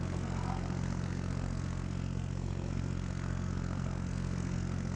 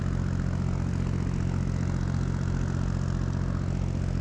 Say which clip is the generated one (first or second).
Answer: first